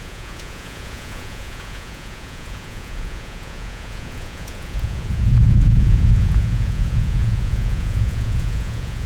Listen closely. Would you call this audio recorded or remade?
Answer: remade